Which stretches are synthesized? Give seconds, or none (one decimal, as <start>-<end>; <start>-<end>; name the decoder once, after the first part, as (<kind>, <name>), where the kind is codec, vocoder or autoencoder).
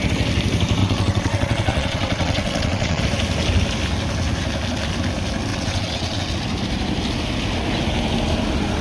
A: 0.8-3.0 (vocoder, WaveNeXt); 5.5-6.3